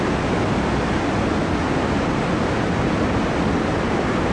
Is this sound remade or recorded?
recorded